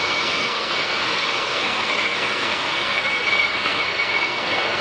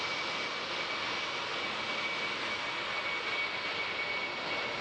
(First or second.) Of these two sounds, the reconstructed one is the first